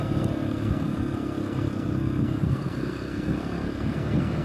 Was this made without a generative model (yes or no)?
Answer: no